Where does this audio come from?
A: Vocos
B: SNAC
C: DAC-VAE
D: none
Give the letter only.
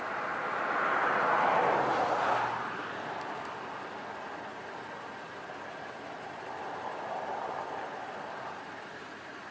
D